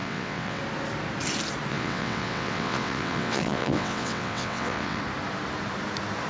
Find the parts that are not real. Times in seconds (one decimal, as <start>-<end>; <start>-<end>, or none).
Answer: 0.0-0.6; 1.7-5.0